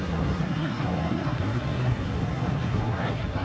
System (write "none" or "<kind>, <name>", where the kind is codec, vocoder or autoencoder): codec, SNAC